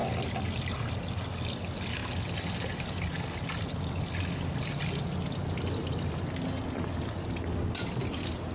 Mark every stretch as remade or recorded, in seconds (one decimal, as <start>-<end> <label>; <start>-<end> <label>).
0.0-8.5 recorded